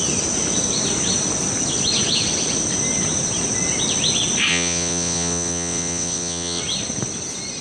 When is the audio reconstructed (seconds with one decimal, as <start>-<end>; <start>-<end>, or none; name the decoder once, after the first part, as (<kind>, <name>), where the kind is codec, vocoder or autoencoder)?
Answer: 4.5-6.6 (vocoder, WaveNeXt)